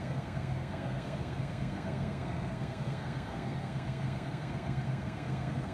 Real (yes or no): no